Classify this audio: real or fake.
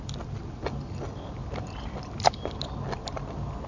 real